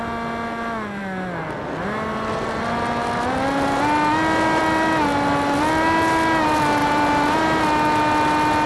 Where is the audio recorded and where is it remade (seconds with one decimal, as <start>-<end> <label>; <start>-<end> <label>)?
0.0-6.8 recorded; 6.8-7.4 remade; 7.4-8.7 recorded